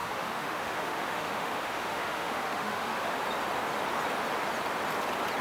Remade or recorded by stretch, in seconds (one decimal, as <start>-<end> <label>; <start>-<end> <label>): 0.0-3.2 remade; 3.2-5.4 recorded